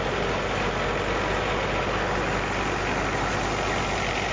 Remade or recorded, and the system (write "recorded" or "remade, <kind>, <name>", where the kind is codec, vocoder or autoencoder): recorded